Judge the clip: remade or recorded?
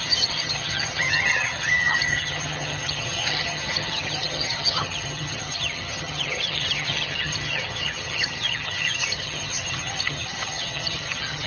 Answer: remade